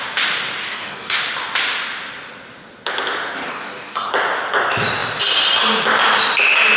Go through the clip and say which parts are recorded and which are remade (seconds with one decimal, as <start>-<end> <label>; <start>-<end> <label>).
0.0-0.6 recorded; 0.6-1.2 remade; 1.2-3.5 recorded; 3.5-4.1 remade; 4.1-6.8 recorded